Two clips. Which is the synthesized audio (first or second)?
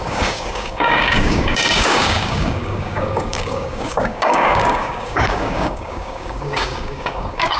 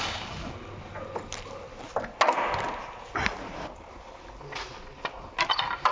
first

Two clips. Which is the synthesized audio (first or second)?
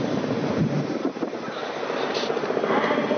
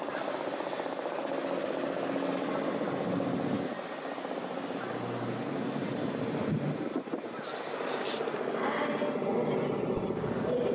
first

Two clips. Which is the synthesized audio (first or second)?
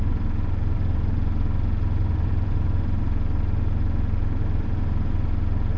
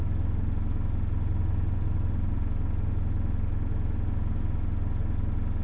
first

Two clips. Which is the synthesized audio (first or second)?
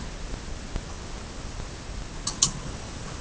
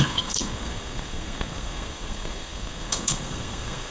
second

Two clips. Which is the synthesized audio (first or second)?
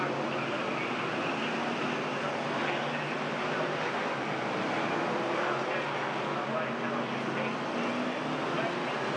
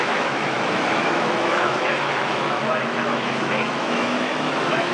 second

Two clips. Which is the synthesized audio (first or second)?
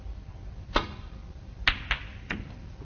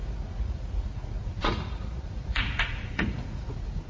second